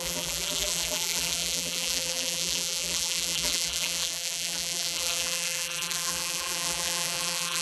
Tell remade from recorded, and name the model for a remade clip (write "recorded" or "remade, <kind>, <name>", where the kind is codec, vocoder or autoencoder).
remade, vocoder, BigVGAN v2